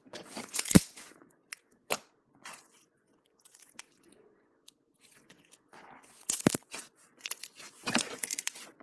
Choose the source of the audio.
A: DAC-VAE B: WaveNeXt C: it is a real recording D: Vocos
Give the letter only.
D